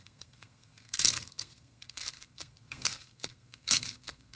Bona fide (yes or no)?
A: no